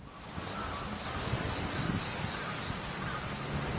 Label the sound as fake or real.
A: real